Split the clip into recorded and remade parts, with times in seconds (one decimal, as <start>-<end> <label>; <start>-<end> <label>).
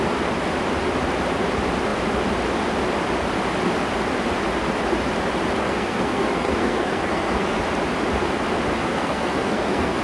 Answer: 0.0-5.6 recorded; 5.6-7.6 remade; 7.6-8.7 recorded; 8.7-10.0 remade